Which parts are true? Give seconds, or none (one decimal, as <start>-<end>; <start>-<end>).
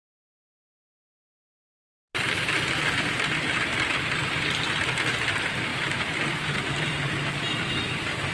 0.0-5.7; 6.9-8.3